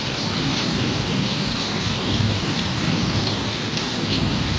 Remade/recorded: remade